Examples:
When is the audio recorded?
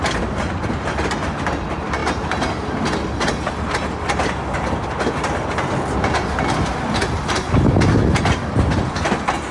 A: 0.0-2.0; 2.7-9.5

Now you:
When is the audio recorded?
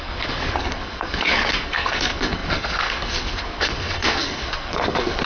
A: none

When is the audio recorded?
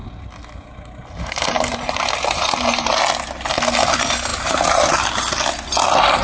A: 3.0-4.3; 4.9-6.2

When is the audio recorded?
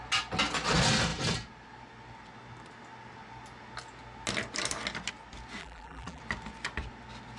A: 0.0-5.6; 6.2-7.4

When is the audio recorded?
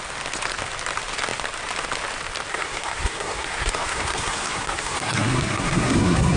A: 0.0-2.5